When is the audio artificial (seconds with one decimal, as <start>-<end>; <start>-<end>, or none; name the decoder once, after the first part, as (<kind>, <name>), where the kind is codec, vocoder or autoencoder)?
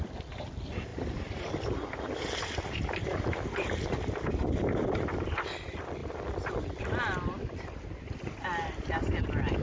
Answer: none